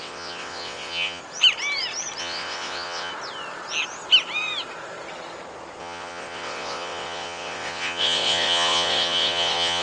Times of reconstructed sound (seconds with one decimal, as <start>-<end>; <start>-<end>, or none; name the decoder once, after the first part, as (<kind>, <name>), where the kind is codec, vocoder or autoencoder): 0.0-1.2 (vocoder, WaveNeXt); 2.2-3.1; 5.8-9.8